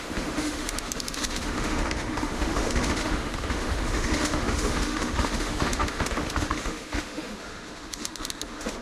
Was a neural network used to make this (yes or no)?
yes